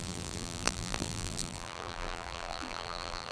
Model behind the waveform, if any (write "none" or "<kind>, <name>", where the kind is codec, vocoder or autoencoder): vocoder, BigVGAN v2